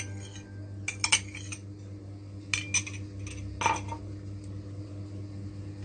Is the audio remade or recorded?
recorded